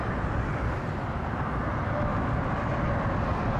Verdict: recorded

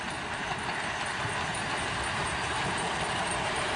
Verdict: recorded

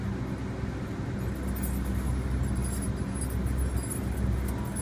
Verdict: recorded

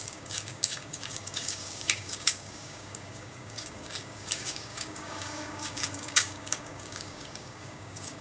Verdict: remade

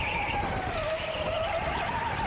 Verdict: recorded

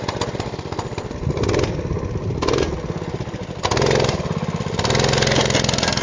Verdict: recorded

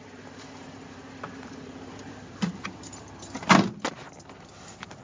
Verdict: remade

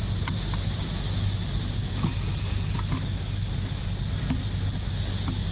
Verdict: recorded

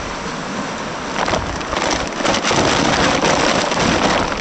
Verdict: recorded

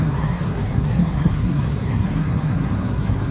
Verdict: remade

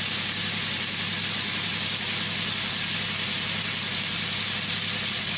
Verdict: recorded